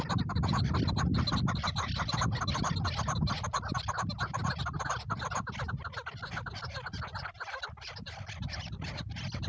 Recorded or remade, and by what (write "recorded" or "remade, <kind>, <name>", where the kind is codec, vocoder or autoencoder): recorded